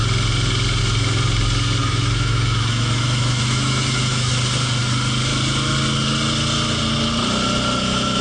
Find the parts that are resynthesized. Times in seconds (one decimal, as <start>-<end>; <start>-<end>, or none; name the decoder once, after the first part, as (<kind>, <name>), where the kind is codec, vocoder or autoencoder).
1.8-4.4 (autoencoder, DAC-VAE)

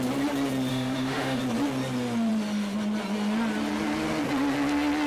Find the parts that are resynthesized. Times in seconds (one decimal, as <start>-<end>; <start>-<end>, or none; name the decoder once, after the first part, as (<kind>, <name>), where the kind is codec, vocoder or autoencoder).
0.7-1.4 (autoencoder, DAC-VAE)

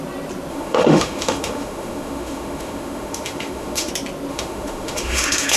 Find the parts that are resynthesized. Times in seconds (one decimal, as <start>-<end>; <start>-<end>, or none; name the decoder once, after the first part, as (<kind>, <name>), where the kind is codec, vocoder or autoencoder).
0.5-3.9 (autoencoder, DAC-VAE); 4.3-5.6

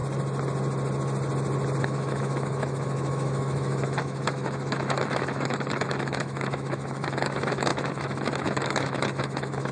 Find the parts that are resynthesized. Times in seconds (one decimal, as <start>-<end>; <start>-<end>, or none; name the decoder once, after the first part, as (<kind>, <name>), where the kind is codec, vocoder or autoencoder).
1.8-9.7 (autoencoder, DAC-VAE)

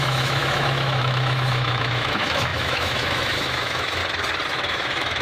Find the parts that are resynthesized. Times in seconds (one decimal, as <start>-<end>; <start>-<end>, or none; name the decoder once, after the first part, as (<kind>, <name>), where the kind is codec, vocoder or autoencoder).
0.0-4.0 (autoencoder, DAC-VAE); 4.5-5.2

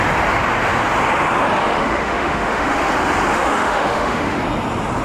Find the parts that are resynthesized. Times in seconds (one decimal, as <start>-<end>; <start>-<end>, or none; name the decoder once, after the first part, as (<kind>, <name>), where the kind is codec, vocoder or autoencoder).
1.6-2.9 (autoencoder, DAC-VAE); 3.3-4.4

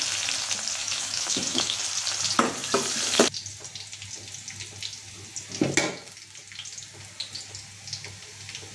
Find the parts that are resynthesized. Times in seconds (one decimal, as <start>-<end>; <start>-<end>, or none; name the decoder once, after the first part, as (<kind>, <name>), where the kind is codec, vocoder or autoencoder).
0.8-1.8 (autoencoder, DAC-VAE)